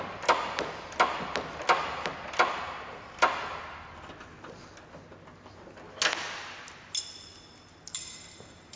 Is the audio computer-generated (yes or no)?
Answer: no